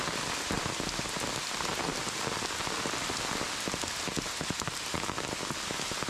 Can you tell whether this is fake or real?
real